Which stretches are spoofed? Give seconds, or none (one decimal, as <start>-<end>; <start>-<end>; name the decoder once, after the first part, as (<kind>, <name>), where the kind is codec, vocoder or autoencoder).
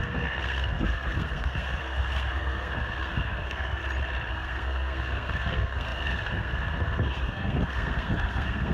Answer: 0.0-3.8 (codec, SNAC); 4.3-8.7